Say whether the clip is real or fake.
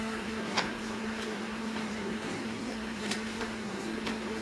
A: fake